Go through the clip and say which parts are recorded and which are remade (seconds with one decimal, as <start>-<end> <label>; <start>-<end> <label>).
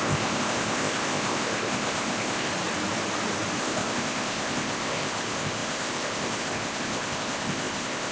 0.0-2.5 remade; 2.5-3.6 recorded; 3.6-8.1 remade